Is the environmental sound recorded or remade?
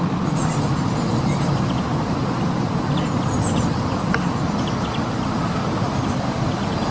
recorded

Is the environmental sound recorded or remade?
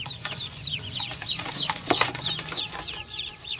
remade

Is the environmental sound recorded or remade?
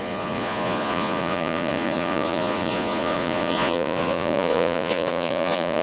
remade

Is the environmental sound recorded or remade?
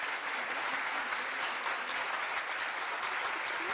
recorded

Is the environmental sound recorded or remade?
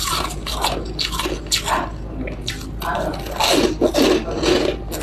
recorded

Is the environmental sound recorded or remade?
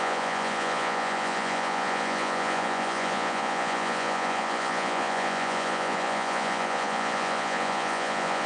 remade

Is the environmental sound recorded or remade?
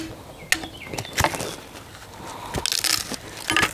recorded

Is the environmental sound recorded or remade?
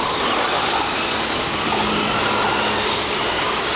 recorded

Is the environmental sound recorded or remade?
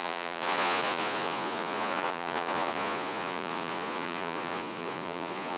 remade